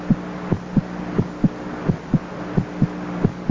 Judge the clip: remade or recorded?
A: recorded